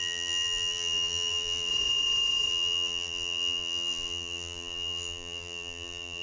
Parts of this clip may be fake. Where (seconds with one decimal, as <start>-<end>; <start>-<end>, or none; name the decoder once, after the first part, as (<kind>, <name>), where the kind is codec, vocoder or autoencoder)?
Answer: 0.0-1.7 (vocoder, BigVGAN v2); 2.5-6.2